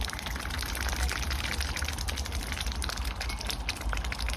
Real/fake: real